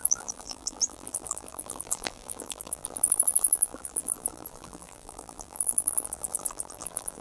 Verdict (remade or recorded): remade